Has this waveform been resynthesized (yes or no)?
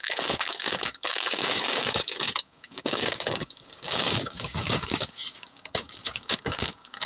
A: yes